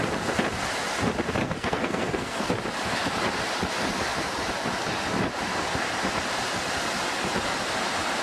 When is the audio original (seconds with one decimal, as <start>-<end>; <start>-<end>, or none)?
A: 0.0-1.4; 2.5-8.2